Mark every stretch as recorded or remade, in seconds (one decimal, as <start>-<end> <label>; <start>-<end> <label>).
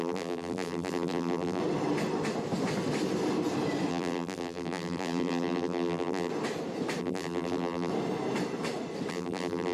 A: 0.0-1.6 remade; 1.6-3.9 recorded; 3.9-6.3 remade; 6.3-7.0 recorded; 7.0-7.9 remade; 7.9-9.1 recorded; 9.1-9.7 remade